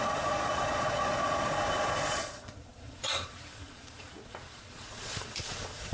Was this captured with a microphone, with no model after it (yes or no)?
no